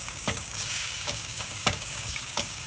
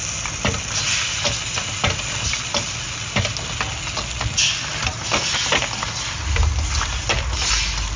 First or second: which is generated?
first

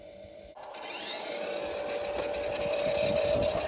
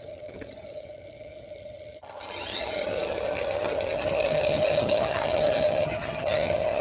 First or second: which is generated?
second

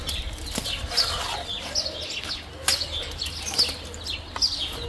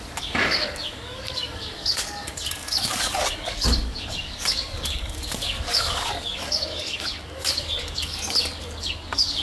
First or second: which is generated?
second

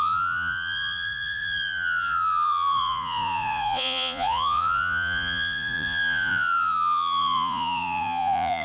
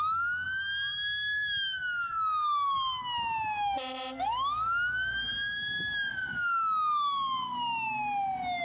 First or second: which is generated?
first